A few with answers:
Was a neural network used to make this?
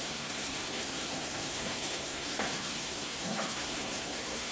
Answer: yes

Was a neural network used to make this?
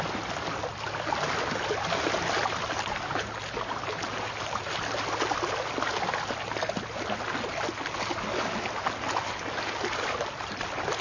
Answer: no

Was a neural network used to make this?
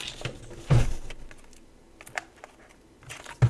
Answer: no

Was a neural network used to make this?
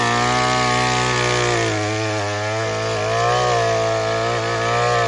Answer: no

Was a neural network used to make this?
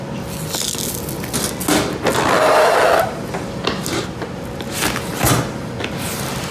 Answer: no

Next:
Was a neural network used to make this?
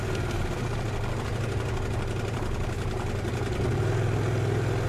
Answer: no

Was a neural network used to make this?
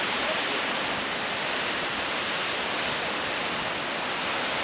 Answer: no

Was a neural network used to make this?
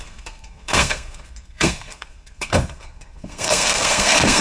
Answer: yes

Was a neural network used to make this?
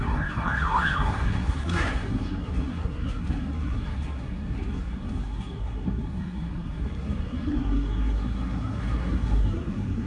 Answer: yes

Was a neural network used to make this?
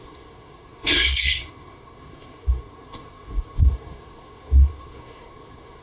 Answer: yes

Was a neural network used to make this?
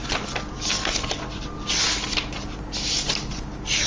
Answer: no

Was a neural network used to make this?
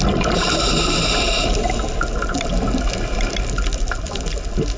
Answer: no